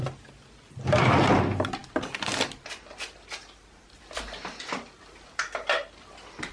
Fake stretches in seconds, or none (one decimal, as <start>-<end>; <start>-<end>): none